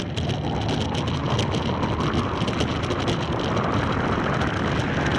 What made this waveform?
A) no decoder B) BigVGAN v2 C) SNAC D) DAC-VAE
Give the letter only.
A